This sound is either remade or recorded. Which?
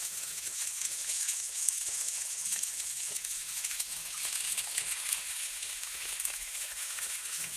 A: remade